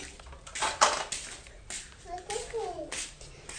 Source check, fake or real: real